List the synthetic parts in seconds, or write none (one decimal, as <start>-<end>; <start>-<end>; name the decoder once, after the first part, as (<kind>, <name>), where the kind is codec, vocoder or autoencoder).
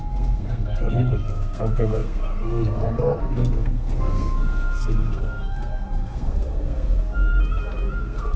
0.0-7.3 (codec, SNAC); 8.0-8.4